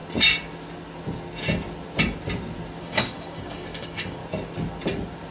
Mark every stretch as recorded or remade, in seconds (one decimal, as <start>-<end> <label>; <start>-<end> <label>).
0.0-2.8 recorded; 2.8-4.2 remade; 4.2-5.3 recorded